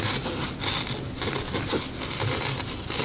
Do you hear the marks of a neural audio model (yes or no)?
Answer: no